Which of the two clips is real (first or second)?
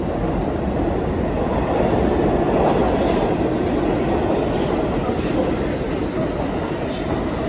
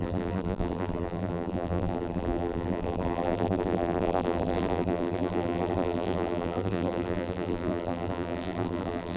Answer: first